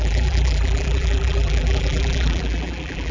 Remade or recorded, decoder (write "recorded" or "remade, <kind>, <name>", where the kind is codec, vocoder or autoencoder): remade, vocoder, BigVGAN v2